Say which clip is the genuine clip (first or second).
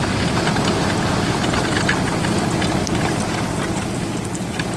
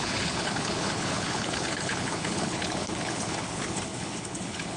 first